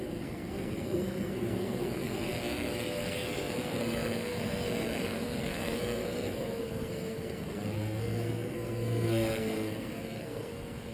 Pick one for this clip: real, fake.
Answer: fake